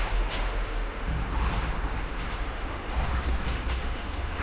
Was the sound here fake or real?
fake